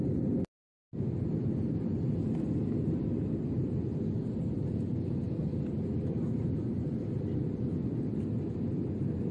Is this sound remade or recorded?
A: recorded